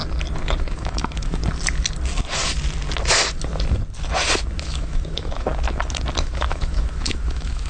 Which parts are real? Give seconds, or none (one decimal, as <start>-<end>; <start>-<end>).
0.0-0.7; 1.4-4.6; 5.5-6.2